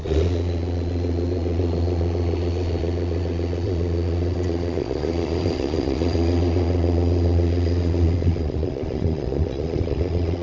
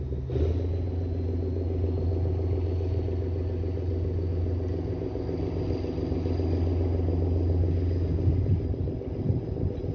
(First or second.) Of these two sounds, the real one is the second